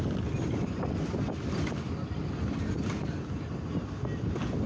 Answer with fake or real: real